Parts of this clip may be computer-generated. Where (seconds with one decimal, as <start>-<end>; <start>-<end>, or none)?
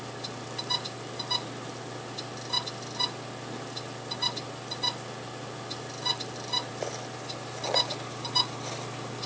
none